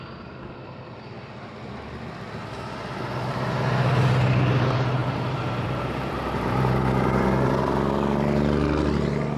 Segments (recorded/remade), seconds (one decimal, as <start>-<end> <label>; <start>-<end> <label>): 0.0-5.0 recorded; 5.0-7.5 remade; 7.5-9.4 recorded